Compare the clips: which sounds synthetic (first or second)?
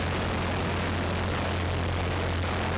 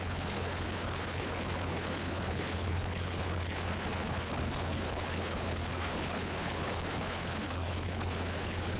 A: second